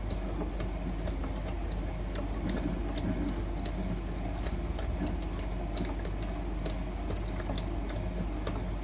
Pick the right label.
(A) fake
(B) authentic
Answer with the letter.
B